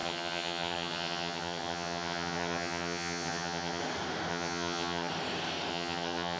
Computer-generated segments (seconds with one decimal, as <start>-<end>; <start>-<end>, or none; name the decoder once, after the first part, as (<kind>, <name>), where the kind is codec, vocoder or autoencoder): 0.0-3.8 (vocoder, HiFi-GAN); 4.3-5.1; 5.7-6.4